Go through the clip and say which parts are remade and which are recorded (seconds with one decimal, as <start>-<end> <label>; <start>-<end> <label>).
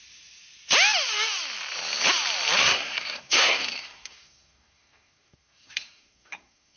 0.0-2.6 recorded; 2.6-6.8 remade